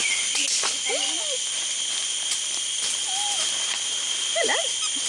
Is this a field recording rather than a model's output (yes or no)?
yes